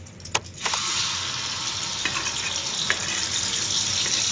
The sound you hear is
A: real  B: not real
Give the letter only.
A